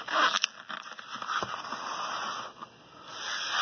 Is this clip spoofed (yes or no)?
no